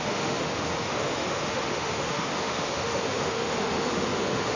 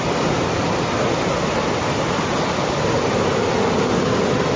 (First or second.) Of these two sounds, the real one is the second